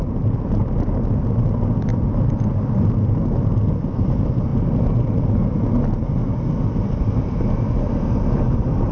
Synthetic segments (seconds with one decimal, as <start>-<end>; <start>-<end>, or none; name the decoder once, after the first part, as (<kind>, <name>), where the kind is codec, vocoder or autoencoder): 1.9-2.4 (vocoder, BigVGAN v2)